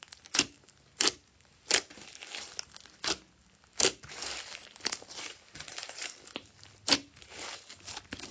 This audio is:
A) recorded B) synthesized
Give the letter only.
A